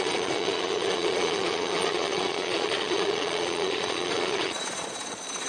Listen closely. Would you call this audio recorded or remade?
remade